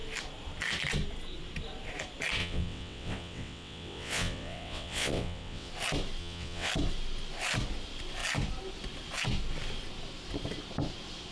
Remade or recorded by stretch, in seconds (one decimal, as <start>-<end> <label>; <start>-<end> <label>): 0.0-2.4 recorded; 2.4-5.7 remade; 5.7-6.2 recorded; 6.2-6.7 remade; 6.7-11.3 recorded